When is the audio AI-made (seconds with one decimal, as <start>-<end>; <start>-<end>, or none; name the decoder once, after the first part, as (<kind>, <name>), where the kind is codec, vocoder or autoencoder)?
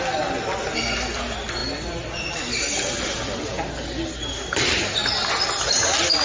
none